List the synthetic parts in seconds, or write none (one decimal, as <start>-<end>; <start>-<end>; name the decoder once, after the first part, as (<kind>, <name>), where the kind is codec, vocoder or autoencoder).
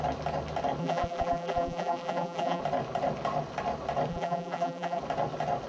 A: 0.8-2.6 (vocoder, BigVGAN v2); 4.1-5.0